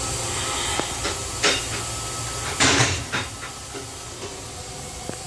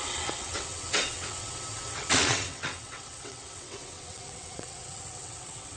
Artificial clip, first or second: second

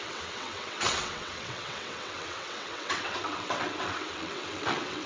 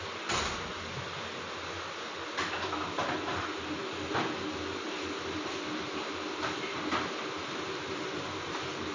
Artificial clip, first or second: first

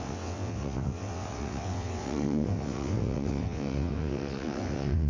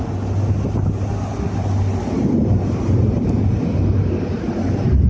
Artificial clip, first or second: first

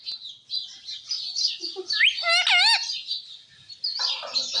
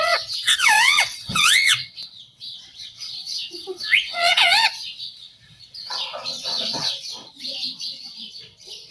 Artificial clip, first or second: second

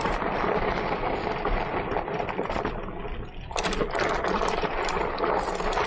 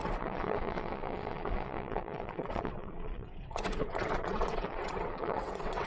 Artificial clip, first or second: second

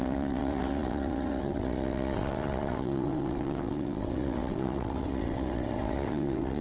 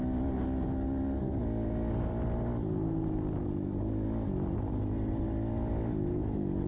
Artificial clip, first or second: first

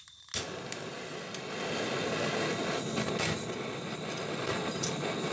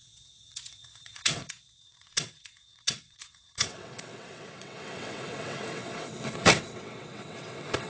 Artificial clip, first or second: second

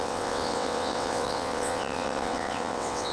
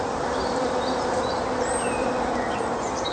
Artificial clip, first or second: first